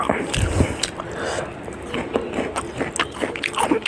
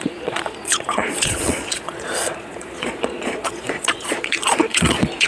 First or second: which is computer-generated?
second